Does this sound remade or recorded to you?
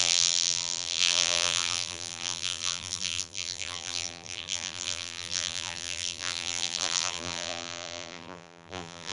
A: remade